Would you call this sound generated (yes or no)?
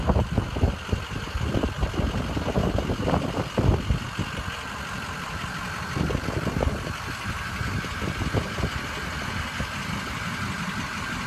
no